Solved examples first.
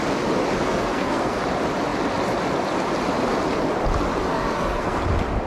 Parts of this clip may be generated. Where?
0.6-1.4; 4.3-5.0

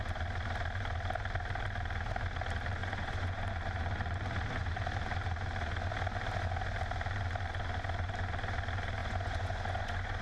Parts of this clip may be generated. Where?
2.8-3.5; 9.0-10.2

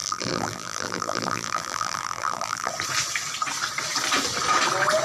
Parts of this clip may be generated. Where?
0.0-2.7

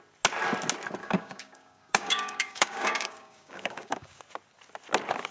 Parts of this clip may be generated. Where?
1.0-4.2

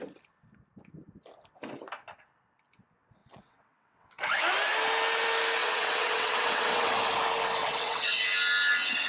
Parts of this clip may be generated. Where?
3.2-4.4; 5.6-6.9; 7.6-8.2

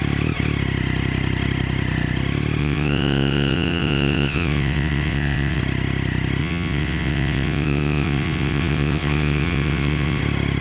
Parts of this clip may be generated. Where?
2.6-5.6; 6.4-10.2

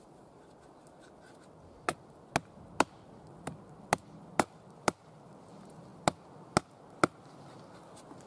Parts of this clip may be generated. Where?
none